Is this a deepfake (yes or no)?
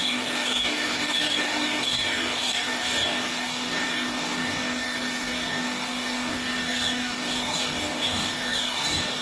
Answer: yes